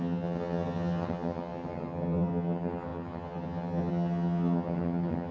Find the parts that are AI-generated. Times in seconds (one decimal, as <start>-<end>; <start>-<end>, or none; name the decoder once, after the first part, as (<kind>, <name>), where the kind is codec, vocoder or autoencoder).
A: 0.0-5.3 (vocoder, HiFi-GAN)